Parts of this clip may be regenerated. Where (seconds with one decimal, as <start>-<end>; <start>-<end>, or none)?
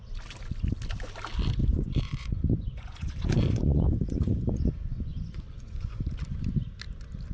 1.6-6.0